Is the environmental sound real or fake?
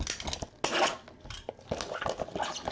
real